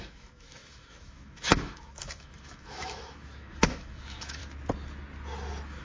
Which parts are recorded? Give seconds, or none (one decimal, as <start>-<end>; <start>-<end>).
4.4-5.8